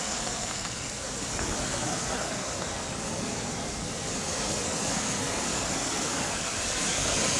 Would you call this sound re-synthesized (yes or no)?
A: yes